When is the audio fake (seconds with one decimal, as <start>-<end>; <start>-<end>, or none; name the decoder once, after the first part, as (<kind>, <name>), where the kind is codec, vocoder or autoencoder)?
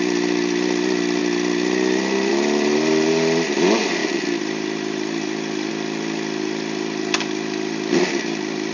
0.0-1.2 (vocoder, BigVGAN v2); 2.3-8.7